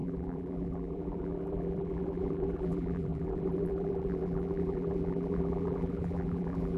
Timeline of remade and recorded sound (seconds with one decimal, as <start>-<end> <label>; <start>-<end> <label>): 0.0-6.8 remade